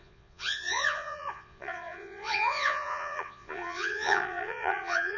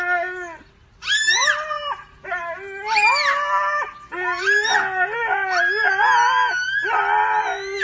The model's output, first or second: first